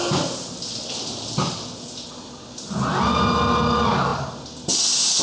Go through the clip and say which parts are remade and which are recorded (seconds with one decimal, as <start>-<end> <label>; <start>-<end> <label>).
0.0-5.2 recorded